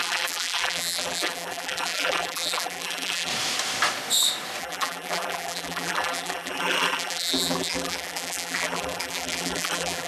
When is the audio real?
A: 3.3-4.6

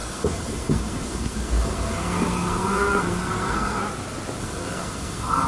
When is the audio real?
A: 3.8-4.4

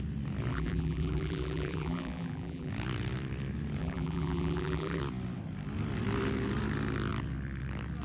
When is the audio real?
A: 0.0-0.5; 2.7-3.8; 5.0-8.0